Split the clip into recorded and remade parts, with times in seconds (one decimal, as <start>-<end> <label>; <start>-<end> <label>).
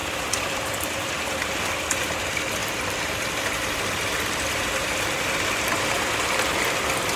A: 0.0-1.0 remade; 1.0-2.6 recorded; 2.6-6.1 remade; 6.1-7.2 recorded